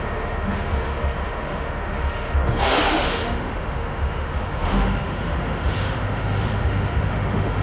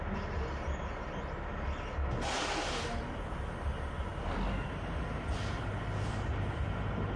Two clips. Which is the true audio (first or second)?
second